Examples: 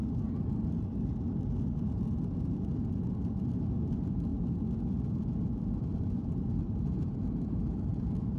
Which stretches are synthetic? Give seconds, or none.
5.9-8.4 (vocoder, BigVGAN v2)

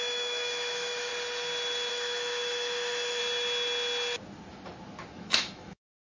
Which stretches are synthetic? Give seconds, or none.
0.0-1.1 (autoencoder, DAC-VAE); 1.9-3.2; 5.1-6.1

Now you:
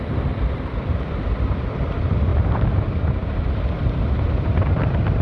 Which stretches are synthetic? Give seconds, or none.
0.9-1.8 (vocoder, BigVGAN v2); 2.3-3.5

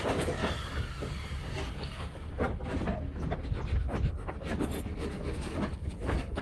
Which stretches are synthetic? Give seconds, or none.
0.4-2.3 (codec, DAC); 4.9-6.4